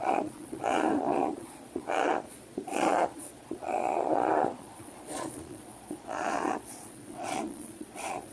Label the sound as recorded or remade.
remade